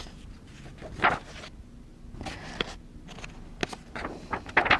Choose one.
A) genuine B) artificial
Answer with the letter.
A